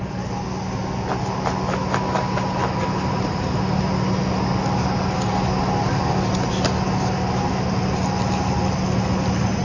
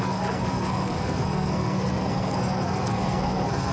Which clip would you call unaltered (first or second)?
first